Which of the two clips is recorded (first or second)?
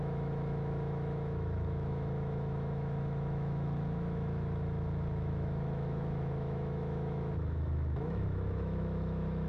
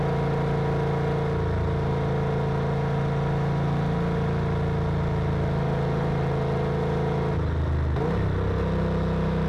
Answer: second